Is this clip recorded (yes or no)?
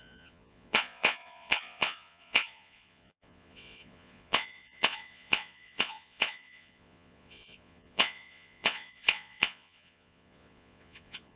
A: no